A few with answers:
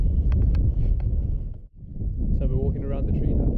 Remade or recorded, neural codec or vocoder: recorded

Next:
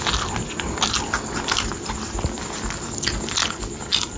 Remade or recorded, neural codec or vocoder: recorded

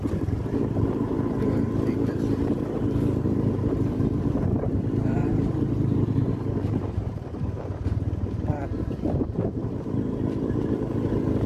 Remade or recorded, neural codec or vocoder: remade, vocoder, BigVGAN v2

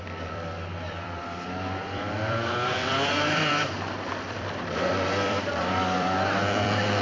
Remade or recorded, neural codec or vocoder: remade, vocoder, BigVGAN v2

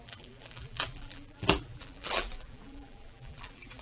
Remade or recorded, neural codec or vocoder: remade, vocoder, BigVGAN v2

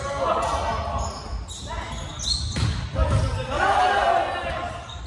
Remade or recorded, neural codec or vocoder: recorded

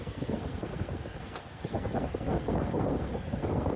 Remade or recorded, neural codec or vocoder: remade, codec, SNAC